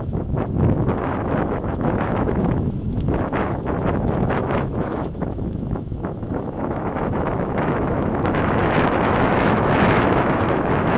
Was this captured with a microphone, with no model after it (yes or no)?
no